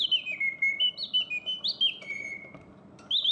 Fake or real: real